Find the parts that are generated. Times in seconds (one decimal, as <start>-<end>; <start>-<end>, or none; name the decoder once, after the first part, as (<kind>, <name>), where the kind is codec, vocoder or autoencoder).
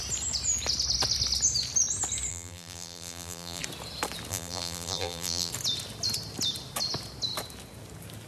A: 2.3-3.6 (vocoder, BigVGAN v2); 4.3-5.5